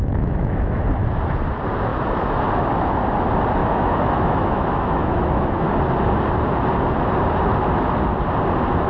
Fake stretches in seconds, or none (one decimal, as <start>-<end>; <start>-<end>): 0.0-0.8; 1.9-2.4; 3.6-5.7